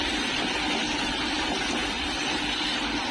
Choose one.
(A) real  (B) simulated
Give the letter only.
B